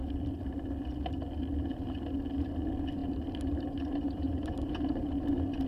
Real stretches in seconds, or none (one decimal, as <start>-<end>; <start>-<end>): 0.0-3.0; 5.1-5.7